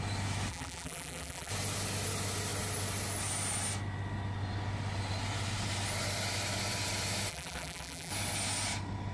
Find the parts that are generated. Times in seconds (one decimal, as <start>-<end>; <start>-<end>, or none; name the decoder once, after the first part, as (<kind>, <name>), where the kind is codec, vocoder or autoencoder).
0.5-1.5 (vocoder, BigVGAN v2); 7.3-8.1